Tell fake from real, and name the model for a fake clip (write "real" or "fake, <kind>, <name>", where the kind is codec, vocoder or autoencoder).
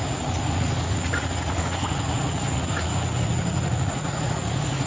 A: fake, vocoder, Vocos